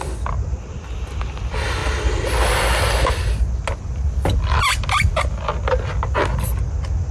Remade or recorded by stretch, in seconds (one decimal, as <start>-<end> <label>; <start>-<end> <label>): 0.0-7.1 recorded